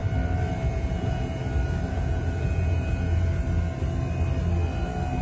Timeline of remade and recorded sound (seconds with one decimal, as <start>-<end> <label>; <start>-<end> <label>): 0.0-0.7 recorded; 0.7-1.4 remade; 1.4-1.9 recorded; 1.9-3.3 remade; 3.3-5.2 recorded